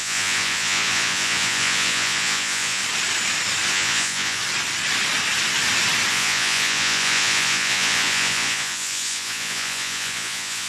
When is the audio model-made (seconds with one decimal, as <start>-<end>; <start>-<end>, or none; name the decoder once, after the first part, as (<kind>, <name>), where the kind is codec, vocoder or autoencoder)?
0.0-2.8 (vocoder, Vocos); 3.7-4.4; 6.1-10.7